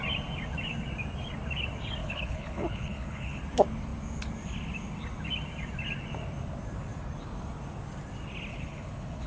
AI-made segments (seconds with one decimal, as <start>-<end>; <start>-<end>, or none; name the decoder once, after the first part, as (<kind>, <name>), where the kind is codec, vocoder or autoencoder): 2.0-3.4 (codec, HILCodec); 8.5-9.3

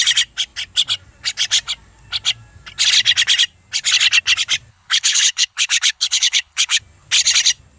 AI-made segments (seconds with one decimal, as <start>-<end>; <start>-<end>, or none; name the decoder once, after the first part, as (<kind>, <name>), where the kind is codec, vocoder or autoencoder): 4.7-6.8 (codec, HILCodec)

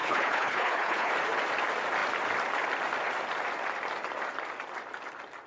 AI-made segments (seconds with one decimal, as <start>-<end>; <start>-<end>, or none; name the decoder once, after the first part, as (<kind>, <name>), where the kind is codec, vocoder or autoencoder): 0.0-1.1 (codec, HILCodec)

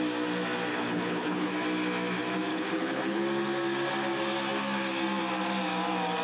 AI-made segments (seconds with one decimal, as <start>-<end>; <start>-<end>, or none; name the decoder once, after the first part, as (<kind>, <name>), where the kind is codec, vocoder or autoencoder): 0.7-1.5 (codec, HILCodec); 2.5-3.2